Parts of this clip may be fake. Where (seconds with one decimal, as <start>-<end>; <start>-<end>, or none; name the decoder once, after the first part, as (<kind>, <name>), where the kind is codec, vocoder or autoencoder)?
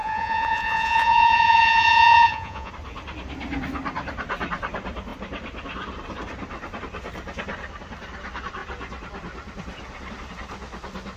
0.0-2.7 (vocoder, Vocos)